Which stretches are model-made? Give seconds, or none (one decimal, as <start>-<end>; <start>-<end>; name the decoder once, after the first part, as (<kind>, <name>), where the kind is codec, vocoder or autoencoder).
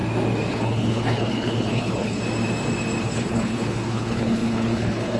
0.5-2.2 (codec, HILCodec); 3.0-5.2